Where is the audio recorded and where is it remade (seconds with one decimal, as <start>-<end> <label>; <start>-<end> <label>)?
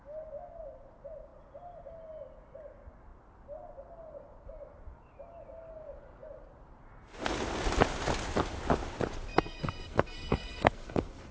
0.0-9.3 recorded; 9.3-11.3 remade